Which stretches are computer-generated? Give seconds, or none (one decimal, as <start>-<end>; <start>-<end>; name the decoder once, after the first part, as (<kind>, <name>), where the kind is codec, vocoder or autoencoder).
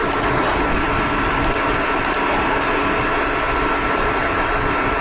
none